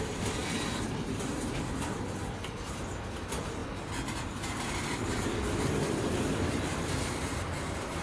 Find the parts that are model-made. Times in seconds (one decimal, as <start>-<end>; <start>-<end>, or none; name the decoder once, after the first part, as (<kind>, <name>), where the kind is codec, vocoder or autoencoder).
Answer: 0.4-0.9 (vocoder, BigVGAN v2); 5.1-8.0